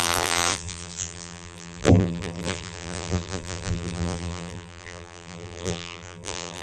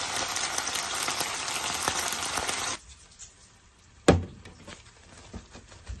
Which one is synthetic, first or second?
first